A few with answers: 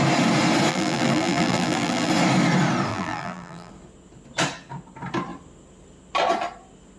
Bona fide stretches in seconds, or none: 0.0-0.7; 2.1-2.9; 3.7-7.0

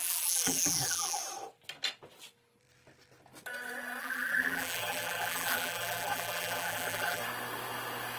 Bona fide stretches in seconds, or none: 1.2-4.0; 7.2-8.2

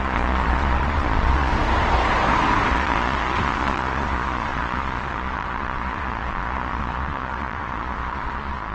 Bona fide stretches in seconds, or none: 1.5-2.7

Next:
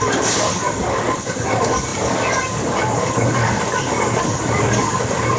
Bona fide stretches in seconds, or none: none

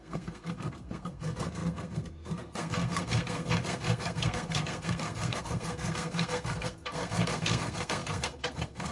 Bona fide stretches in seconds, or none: none

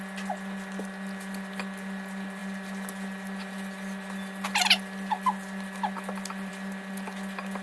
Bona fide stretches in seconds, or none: 0.0-7.6

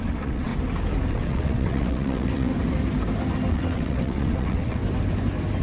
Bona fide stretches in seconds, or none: 0.5-1.1; 2.5-3.5; 4.8-5.6